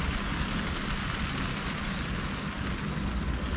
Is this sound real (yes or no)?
yes